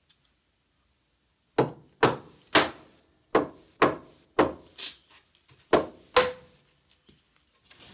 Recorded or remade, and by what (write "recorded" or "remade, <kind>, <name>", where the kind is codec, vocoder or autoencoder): recorded